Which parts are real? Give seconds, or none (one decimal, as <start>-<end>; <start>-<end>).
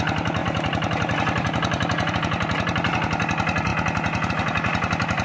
3.7-4.3